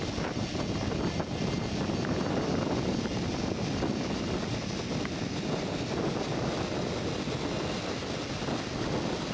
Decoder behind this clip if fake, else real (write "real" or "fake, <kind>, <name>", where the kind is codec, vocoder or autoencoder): real